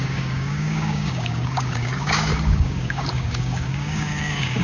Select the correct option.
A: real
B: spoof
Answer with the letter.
B